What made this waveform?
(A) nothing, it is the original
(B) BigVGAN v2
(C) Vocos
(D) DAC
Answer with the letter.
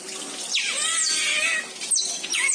A